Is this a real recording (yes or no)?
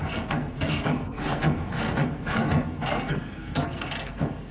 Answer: no